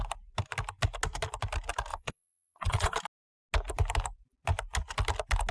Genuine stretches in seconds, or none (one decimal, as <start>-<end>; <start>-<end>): 0.0-1.9; 3.0-5.5

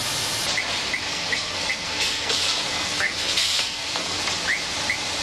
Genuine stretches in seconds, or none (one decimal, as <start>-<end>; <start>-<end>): 0.0-1.1; 4.2-5.2